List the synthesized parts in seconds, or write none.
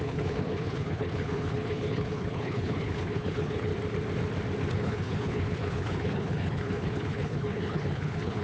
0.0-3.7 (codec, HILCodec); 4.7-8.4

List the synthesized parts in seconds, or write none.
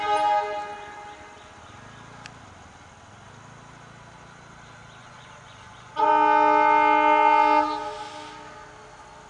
5.0-6.1 (vocoder, Vocos)